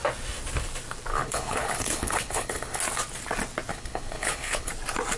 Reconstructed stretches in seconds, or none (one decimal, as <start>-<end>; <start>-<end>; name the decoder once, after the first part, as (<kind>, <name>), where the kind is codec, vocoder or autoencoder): 1.1-2.8 (codec, HILCodec); 3.7-4.7